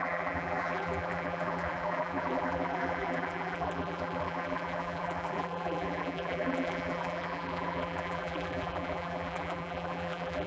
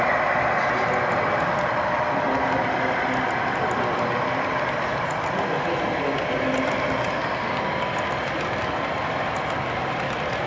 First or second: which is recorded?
second